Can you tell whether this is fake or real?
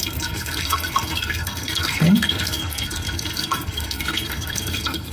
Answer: fake